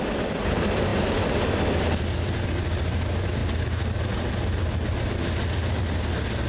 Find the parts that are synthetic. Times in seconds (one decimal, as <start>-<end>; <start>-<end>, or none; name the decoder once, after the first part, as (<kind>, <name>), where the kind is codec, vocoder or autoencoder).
none